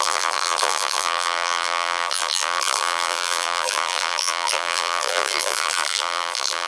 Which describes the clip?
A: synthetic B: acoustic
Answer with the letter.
A